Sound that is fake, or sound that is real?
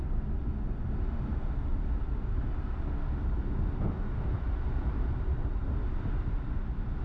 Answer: real